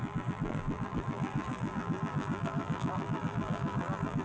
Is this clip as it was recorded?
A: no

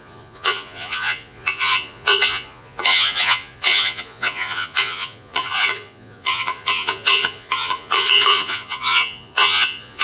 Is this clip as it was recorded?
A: no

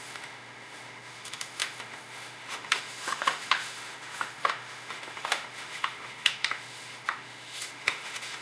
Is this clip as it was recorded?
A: no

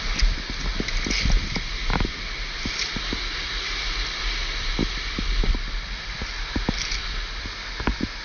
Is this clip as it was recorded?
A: yes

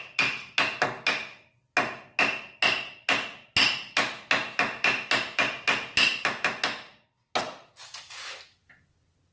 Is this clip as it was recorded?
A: yes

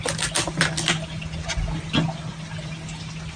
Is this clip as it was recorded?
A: yes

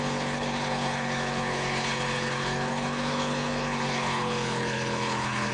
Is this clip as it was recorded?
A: no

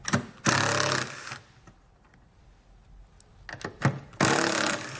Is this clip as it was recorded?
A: yes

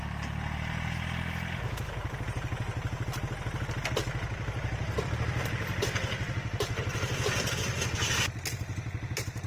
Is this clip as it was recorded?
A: yes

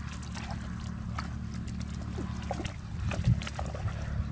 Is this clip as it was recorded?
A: yes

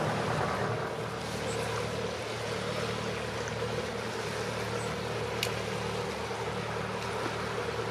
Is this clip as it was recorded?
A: yes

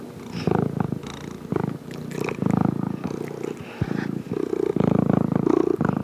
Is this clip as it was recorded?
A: yes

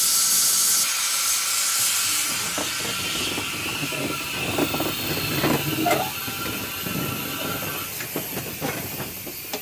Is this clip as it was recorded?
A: yes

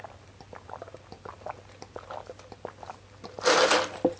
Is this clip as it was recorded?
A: yes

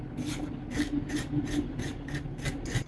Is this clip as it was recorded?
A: yes